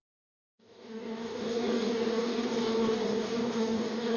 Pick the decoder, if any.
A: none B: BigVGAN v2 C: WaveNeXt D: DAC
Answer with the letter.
D